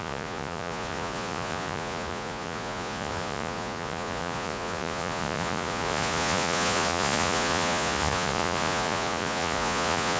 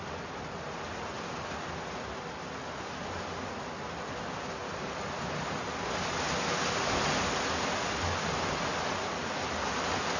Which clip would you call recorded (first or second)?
second